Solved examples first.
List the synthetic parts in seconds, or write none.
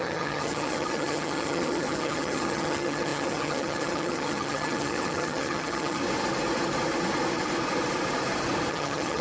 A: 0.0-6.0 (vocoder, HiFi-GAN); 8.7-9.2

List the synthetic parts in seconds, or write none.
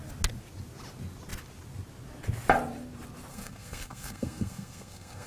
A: 3.3-5.3 (codec, SNAC)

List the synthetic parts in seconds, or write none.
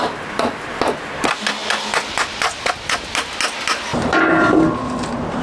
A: 3.9-4.6 (vocoder, BigVGAN v2)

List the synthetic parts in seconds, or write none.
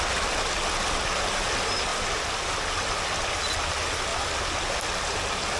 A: none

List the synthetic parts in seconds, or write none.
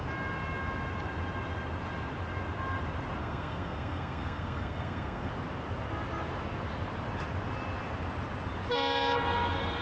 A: 3.2-5.3 (codec, SNAC)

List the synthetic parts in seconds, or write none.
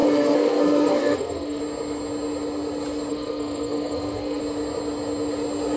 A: 0.0-1.6 (codec, SNAC); 3.1-4.4